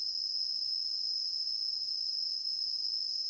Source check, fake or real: real